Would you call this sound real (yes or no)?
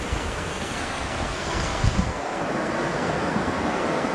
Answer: no